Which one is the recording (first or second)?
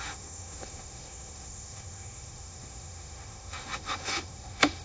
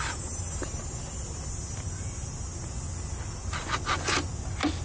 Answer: second